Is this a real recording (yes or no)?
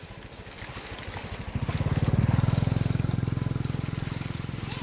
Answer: yes